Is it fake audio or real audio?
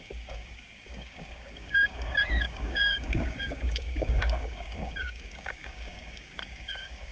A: fake